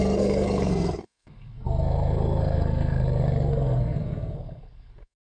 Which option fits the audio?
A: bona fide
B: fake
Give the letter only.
B